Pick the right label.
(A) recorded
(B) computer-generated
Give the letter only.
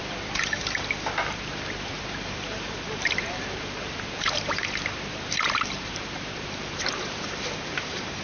B